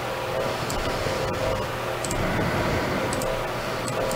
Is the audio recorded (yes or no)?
yes